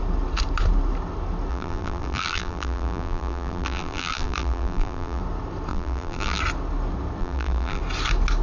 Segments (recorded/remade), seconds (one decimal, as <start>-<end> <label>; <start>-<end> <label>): 0.0-1.5 recorded; 1.5-5.2 remade; 5.2-5.7 recorded; 5.7-6.4 remade; 6.4-7.2 recorded; 7.2-7.8 remade; 7.8-8.4 recorded